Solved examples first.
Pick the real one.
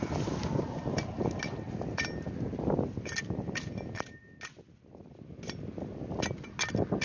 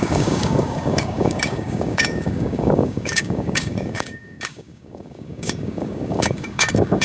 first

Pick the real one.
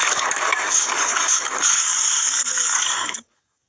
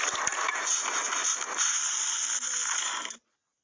second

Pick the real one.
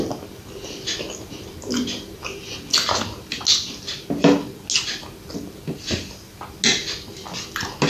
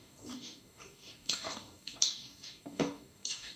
first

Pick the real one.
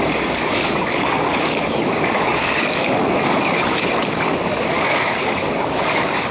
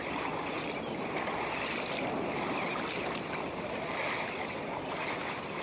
second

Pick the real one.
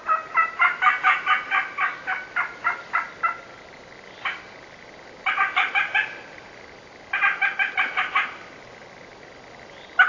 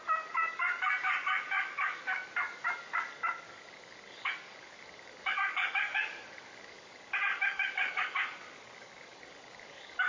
first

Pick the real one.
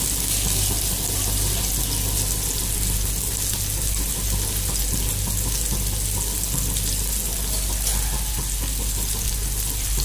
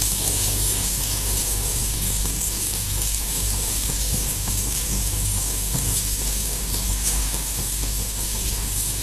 first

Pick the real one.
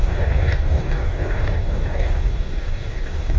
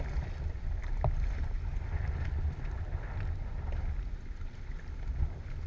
second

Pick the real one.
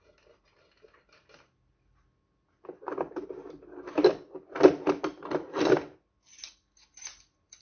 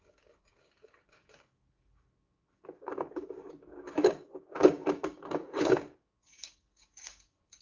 first